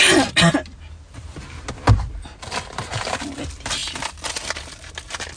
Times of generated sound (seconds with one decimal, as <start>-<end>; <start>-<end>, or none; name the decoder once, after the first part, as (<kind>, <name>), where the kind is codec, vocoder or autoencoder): none